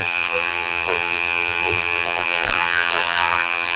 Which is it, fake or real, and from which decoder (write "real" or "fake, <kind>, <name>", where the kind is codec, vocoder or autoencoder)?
fake, vocoder, BigVGAN v2